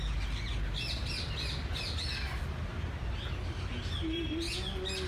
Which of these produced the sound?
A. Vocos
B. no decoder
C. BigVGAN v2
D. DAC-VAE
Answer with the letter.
B